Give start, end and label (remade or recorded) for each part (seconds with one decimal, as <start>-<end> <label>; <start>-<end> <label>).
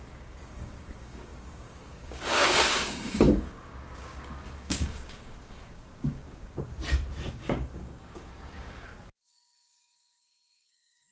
0.0-6.7 remade; 6.7-7.3 recorded; 7.3-11.1 remade